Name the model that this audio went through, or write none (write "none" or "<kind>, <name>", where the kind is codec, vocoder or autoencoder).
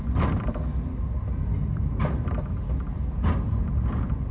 none